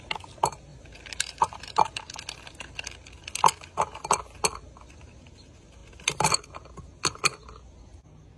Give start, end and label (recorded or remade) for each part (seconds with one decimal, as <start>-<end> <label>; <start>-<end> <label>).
0.0-0.7 recorded; 0.7-2.0 remade; 2.0-8.4 recorded